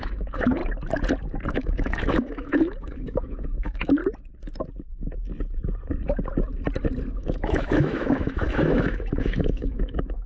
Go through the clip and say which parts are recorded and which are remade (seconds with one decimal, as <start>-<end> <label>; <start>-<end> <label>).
0.0-0.6 remade; 0.6-1.5 recorded; 1.5-4.0 remade; 4.0-7.1 recorded; 7.1-10.3 remade